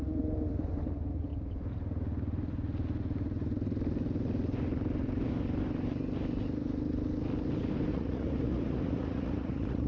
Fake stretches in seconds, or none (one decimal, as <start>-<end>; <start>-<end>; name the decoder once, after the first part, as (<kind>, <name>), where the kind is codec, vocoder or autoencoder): 7.9-9.9 (vocoder, Vocos)